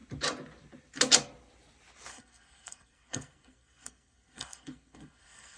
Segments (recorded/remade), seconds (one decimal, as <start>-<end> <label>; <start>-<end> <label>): 0.0-2.1 recorded; 2.1-5.6 remade